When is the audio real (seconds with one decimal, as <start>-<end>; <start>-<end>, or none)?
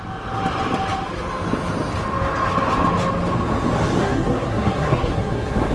0.0-4.0